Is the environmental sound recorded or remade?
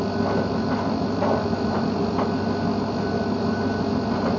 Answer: recorded